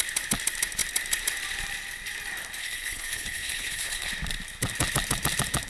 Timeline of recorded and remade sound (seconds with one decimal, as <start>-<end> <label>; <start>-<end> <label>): 0.0-2.6 recorded; 2.6-4.1 remade; 4.1-5.7 recorded